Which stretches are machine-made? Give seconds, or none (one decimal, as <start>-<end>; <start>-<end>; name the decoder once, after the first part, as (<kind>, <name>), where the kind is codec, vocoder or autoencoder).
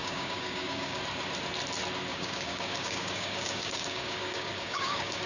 0.0-1.0 (codec, DAC); 2.1-5.3